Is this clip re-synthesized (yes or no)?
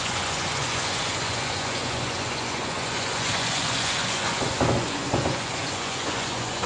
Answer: yes